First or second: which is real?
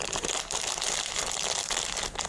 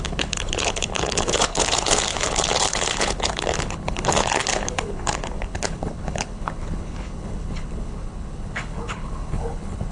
first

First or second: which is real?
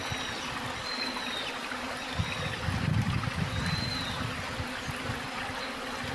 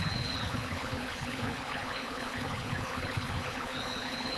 first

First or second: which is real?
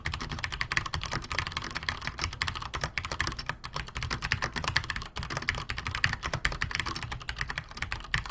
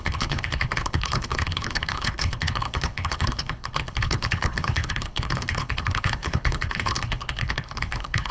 first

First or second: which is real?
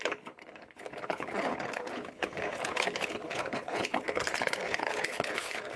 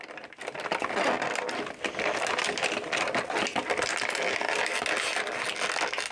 second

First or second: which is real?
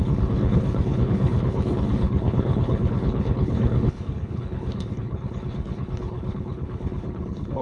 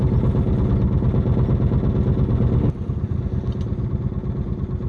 second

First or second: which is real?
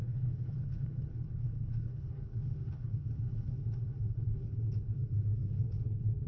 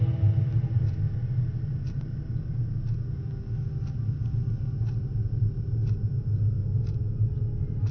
second